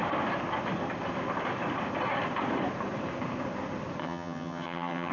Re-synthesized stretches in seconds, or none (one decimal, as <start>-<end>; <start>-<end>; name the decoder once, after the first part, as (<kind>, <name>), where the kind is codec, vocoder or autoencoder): 4.0-5.1 (vocoder, HiFi-GAN)